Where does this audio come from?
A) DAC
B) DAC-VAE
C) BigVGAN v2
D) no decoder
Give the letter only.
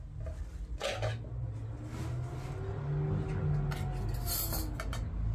D